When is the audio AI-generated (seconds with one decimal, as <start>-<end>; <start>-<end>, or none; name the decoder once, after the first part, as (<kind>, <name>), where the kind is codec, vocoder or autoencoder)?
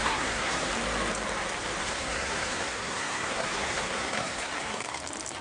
0.0-0.7 (codec, SNAC); 1.8-5.0